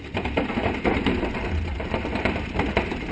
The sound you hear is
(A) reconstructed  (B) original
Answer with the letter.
B